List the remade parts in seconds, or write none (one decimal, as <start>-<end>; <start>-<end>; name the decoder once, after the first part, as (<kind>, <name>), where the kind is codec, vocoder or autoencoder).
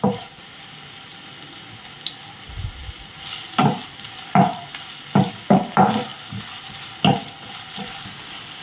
none